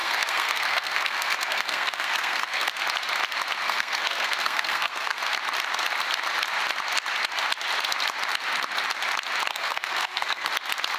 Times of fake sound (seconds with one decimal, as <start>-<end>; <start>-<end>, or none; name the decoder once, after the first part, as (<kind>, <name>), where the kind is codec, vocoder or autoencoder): 0.0-2.7 (codec, SNAC); 3.6-5.2; 9.5-10.5